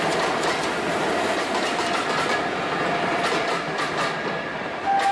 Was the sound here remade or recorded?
recorded